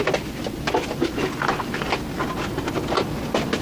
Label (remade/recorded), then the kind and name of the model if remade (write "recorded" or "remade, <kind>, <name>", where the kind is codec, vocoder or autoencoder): recorded